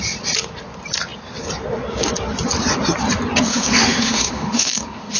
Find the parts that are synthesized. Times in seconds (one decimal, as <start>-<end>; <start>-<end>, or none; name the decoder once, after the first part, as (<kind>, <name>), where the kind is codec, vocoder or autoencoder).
3.5-5.2 (autoencoder, DAC-VAE)